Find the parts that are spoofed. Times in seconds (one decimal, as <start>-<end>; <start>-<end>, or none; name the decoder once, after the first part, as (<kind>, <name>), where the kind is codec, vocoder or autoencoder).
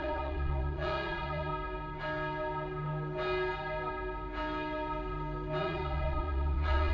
0.0-1.5 (vocoder, Vocos); 5.6-6.9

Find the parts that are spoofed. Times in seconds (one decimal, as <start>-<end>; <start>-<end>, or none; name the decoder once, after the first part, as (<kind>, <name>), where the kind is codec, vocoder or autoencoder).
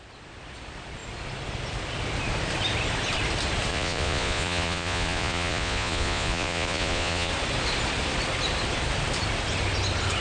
3.7-7.3 (vocoder, Vocos)